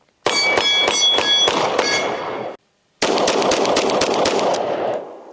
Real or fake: real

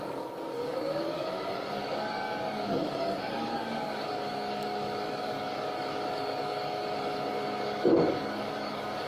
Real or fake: fake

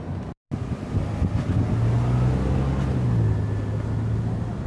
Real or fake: real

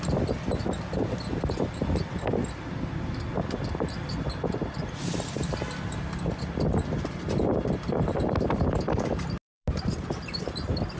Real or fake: real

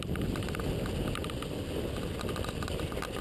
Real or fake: real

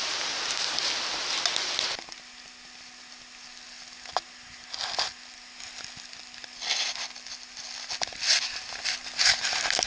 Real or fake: real